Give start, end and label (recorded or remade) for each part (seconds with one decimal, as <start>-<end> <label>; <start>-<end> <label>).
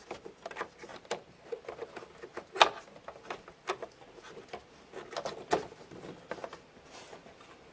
0.0-0.9 recorded; 0.9-1.5 remade; 1.5-7.7 recorded